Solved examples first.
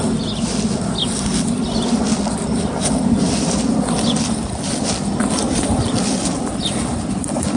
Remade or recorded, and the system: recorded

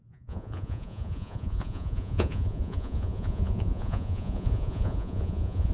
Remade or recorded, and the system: remade, vocoder, Vocos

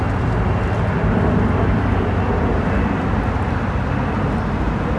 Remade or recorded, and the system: recorded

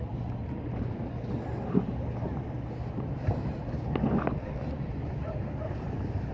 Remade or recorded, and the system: recorded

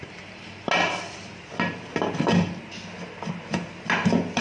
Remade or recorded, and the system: recorded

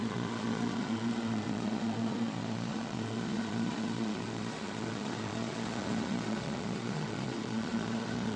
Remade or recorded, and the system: remade, vocoder, Vocos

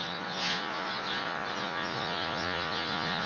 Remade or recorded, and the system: remade, vocoder, Vocos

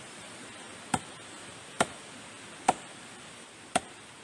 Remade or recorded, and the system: recorded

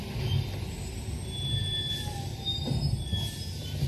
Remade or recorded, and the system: recorded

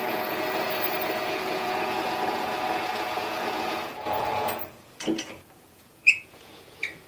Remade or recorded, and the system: remade, vocoder, Vocos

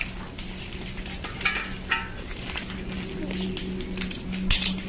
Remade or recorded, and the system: recorded